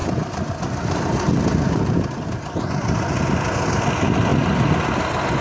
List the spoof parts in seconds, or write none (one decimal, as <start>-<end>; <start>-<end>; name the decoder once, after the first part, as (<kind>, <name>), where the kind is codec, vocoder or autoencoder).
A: none